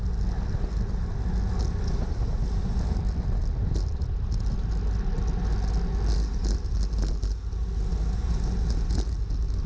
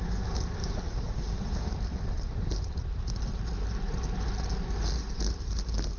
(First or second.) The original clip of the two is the first